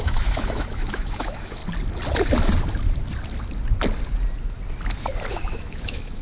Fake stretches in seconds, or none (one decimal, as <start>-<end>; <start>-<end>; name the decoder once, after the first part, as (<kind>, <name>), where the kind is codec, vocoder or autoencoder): 0.0-1.6 (autoencoder, DAC-VAE); 5.3-6.2